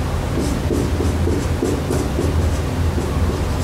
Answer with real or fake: real